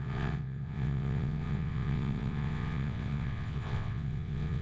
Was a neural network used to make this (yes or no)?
yes